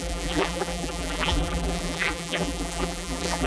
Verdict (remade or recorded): remade